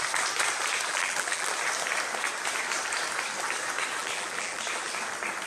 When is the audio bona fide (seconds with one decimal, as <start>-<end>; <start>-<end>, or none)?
0.0-0.9; 1.5-4.0; 4.6-5.5